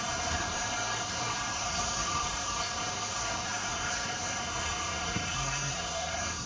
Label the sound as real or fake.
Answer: fake